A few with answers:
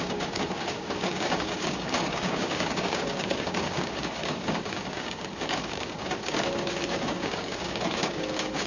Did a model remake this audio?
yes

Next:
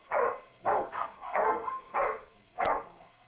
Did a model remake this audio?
yes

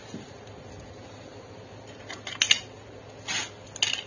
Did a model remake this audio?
no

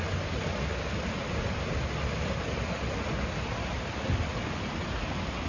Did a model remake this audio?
no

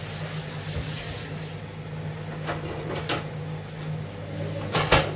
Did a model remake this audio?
no